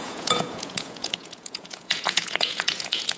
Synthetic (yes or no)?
yes